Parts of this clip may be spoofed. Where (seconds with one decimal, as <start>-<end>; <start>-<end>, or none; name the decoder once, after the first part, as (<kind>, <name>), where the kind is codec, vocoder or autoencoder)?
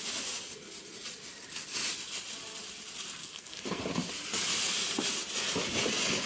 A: 3.2-3.8 (codec, SNAC)